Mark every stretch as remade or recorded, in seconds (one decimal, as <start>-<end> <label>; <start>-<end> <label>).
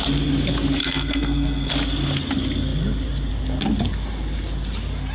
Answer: 0.0-0.8 recorded; 0.8-1.7 remade; 1.7-5.1 recorded